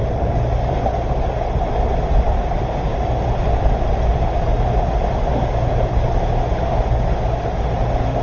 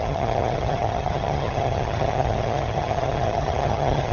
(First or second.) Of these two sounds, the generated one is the second